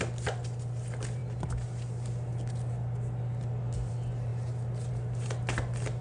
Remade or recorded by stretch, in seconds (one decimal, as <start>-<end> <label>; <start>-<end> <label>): 0.0-6.0 recorded